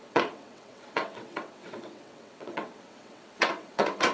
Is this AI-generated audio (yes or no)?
yes